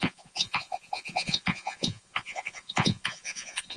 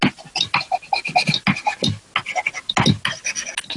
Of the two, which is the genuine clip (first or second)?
second